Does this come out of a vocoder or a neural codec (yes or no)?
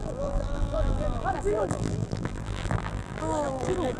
yes